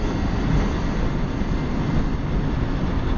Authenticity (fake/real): real